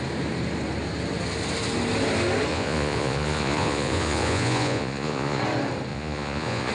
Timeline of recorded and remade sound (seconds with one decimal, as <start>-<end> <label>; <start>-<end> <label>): 0.0-2.5 recorded; 2.5-5.4 remade; 5.4-5.9 recorded; 5.9-6.7 remade